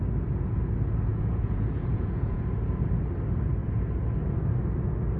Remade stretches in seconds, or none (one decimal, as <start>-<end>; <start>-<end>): 1.1-2.4